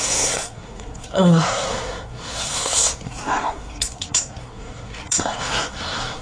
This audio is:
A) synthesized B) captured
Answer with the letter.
A